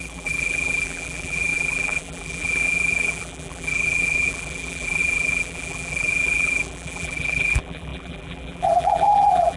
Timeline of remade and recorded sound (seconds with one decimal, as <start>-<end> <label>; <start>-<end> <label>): 0.0-9.6 remade